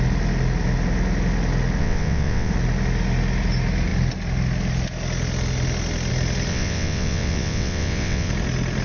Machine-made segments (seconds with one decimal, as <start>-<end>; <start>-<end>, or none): 1.8-2.5; 6.5-8.3